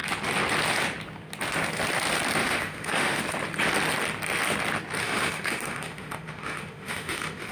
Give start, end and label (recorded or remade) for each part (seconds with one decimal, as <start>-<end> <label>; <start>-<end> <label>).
0.0-2.4 recorded; 2.4-3.2 remade; 3.2-5.0 recorded; 5.0-7.5 remade